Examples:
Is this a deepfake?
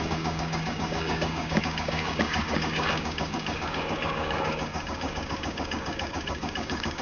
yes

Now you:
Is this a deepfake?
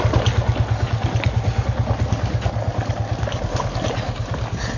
no